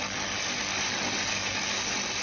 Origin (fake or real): real